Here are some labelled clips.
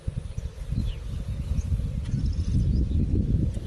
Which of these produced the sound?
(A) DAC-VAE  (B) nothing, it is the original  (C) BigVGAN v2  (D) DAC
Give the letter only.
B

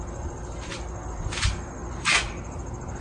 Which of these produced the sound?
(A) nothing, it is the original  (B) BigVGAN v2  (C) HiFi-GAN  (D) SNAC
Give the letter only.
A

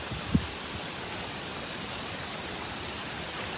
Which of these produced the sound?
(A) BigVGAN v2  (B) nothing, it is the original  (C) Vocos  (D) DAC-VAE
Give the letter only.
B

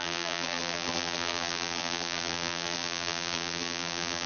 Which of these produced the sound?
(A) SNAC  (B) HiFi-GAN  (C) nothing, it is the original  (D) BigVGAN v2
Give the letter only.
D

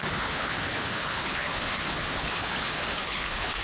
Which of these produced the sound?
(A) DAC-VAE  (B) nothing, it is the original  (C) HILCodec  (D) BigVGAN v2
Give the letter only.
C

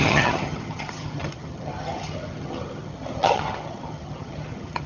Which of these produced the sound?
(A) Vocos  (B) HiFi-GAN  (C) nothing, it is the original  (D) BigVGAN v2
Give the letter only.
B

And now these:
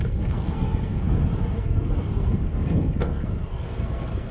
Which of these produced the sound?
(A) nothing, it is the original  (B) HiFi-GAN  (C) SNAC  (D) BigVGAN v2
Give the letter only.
C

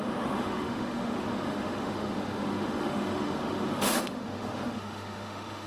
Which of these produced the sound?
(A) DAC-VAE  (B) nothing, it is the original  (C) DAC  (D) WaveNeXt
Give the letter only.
A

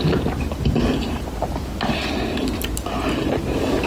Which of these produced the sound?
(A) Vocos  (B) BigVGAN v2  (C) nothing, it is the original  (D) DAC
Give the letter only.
C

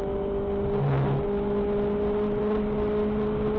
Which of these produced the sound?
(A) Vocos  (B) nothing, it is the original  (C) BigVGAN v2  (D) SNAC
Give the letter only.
B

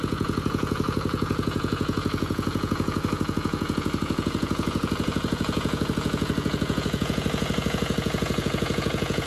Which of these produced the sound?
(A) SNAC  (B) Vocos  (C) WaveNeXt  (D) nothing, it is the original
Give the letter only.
B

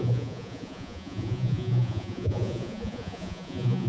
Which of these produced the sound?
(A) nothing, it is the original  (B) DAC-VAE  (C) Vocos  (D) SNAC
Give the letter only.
C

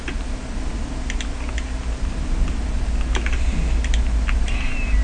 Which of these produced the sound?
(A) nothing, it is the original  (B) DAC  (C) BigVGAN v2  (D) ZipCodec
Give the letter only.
A